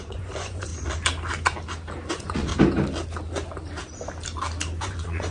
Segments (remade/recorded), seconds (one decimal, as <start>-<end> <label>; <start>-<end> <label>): 0.0-0.7 remade; 0.7-2.1 recorded; 2.1-2.5 remade; 2.5-4.8 recorded; 4.8-5.3 remade